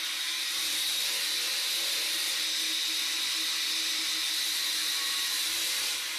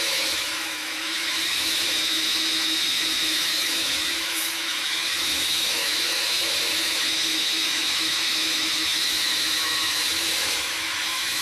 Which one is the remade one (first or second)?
second